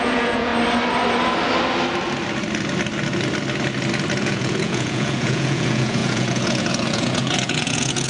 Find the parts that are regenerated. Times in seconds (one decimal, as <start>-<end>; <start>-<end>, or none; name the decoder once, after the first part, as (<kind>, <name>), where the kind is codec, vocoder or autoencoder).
0.0-0.5 (vocoder, Vocos); 4.2-8.1